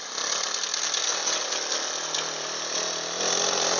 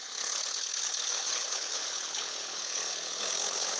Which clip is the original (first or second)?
first